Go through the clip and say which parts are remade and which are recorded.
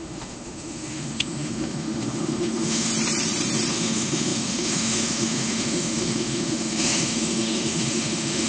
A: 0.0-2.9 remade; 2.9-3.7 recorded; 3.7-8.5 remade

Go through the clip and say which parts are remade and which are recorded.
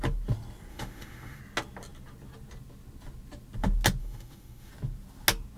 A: 0.0-0.7 recorded; 0.7-1.4 remade; 1.4-4.0 recorded; 4.0-4.7 remade; 4.7-5.6 recorded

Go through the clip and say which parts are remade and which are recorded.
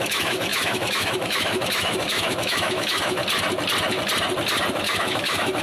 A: 0.0-3.2 remade; 3.2-4.7 recorded; 4.7-5.6 remade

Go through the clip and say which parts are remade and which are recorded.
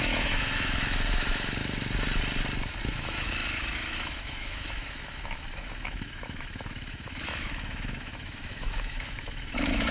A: 0.0-1.6 remade; 1.6-2.9 recorded; 2.9-9.9 remade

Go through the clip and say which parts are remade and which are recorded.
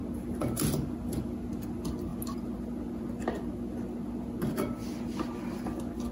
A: 0.0-6.1 recorded